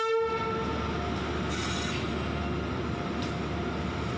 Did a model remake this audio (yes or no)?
no